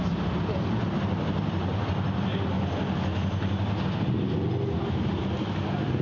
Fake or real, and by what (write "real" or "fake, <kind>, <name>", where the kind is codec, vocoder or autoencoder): real